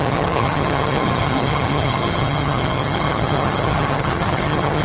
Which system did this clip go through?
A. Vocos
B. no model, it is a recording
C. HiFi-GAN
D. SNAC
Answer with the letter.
C